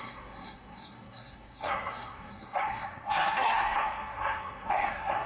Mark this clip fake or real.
fake